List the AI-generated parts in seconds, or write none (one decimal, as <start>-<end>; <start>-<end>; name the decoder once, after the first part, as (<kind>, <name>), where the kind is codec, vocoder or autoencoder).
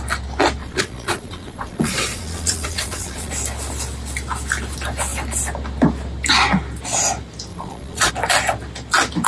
0.6-3.3 (vocoder, Vocos); 7.5-8.1